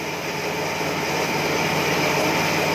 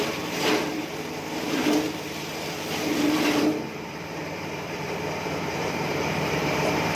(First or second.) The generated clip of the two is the second